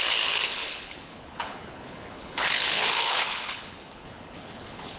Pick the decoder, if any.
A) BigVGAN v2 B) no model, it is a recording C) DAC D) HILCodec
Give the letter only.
D